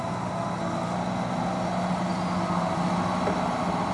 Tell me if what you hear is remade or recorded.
recorded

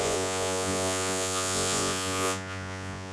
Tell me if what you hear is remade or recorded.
remade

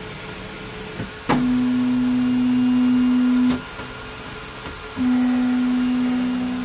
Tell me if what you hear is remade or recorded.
recorded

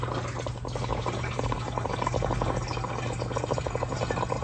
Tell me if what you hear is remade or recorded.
recorded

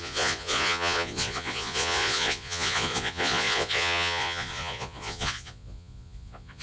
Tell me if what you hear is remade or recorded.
remade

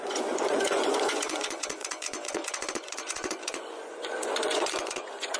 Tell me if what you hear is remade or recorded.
remade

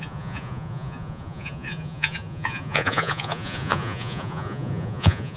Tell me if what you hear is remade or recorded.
remade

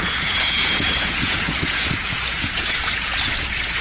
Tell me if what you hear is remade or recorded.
remade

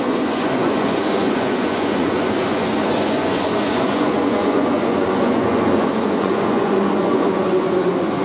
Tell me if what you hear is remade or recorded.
remade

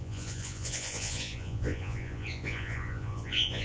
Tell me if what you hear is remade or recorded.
remade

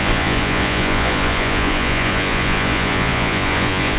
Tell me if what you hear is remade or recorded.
remade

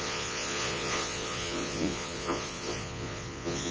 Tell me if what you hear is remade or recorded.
remade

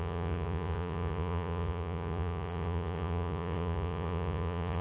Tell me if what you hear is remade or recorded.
remade